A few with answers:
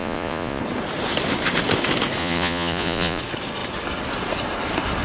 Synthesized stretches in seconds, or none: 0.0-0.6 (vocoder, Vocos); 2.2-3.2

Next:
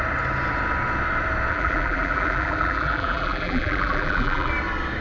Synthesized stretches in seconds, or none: 1.5-4.5 (vocoder, BigVGAN v2)

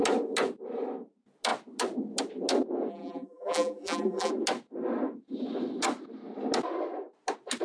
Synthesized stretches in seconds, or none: 2.9-4.3 (vocoder, BigVGAN v2)

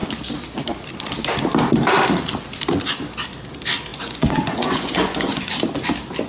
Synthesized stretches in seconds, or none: 3.9-5.5 (vocoder, Vocos)

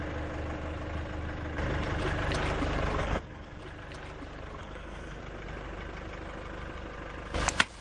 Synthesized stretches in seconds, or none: 3.0-3.6 (codec, SNAC); 4.6-5.2

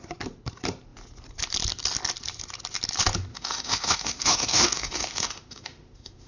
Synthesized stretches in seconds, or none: 3.3-6.3 (autoencoder, DAC-VAE)

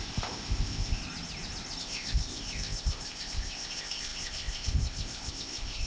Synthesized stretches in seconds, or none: 0.0-1.0 (codec, ZipCodec); 1.8-5.9